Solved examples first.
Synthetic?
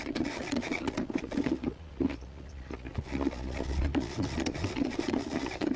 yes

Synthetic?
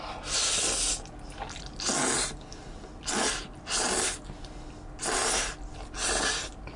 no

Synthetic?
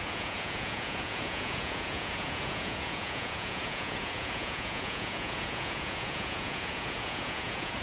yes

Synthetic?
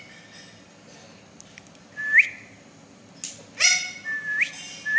no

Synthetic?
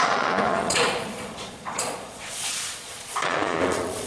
yes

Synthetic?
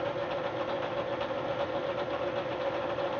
no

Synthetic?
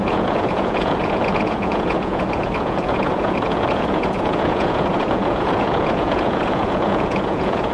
yes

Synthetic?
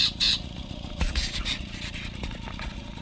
yes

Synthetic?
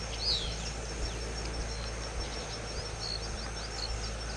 no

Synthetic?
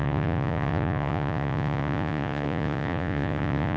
yes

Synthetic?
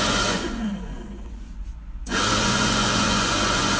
yes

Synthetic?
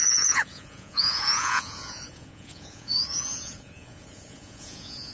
yes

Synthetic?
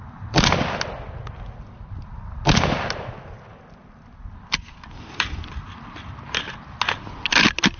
no